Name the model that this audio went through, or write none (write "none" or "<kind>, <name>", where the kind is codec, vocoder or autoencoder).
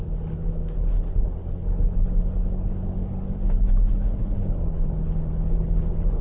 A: codec, HILCodec